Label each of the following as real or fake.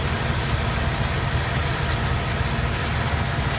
real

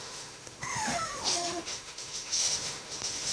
fake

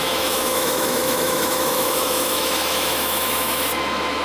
fake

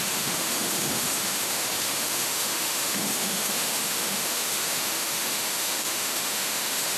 fake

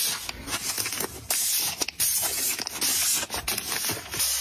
real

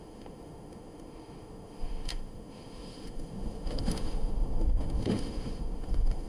fake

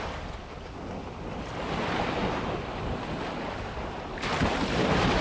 real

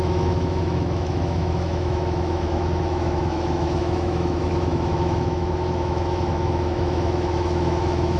fake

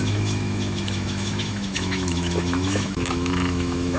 fake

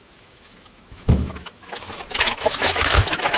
fake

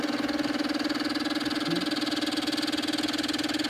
real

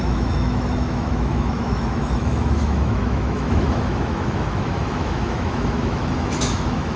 fake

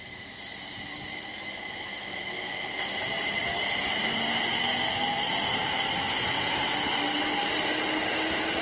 real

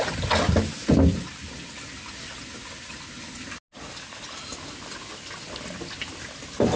real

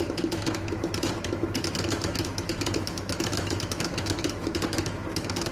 fake